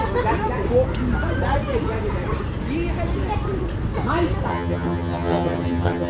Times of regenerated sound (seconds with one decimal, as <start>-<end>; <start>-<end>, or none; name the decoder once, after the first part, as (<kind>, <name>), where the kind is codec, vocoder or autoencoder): 4.5-6.1 (vocoder, HiFi-GAN)